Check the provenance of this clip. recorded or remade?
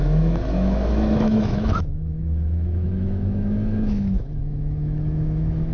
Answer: remade